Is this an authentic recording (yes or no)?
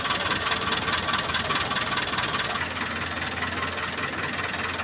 yes